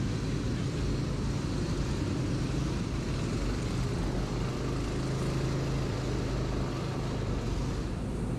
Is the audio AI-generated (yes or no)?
no